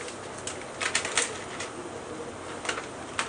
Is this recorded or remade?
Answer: recorded